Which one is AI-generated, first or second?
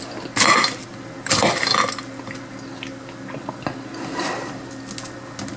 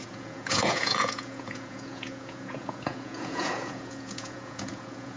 second